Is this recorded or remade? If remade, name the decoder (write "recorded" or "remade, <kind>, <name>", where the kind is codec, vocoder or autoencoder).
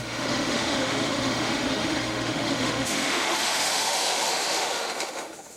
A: remade, autoencoder, DAC-VAE